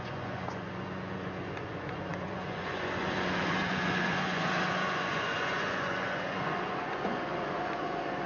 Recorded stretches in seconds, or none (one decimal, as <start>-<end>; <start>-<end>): none